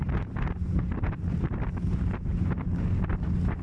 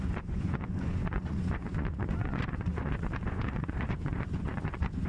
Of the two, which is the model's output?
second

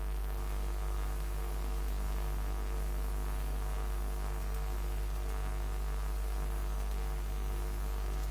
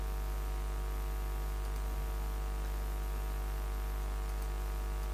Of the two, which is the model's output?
first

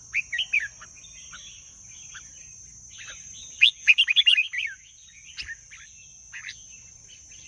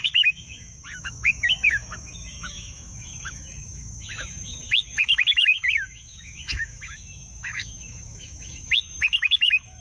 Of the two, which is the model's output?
second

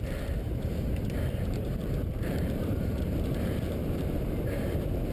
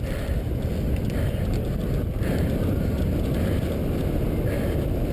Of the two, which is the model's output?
first